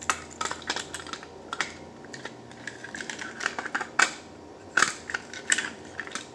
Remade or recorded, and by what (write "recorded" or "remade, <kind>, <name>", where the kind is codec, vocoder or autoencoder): recorded